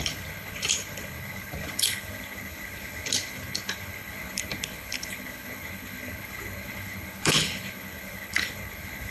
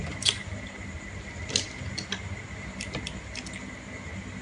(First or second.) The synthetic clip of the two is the first